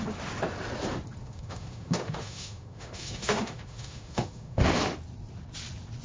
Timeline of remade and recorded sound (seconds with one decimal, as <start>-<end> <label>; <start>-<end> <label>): 0.0-1.2 recorded; 1.2-4.8 remade; 4.8-6.0 recorded